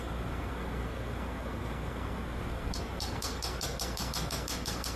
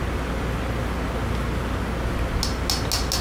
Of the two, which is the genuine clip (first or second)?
second